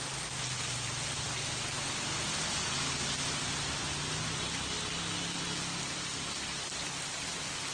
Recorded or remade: recorded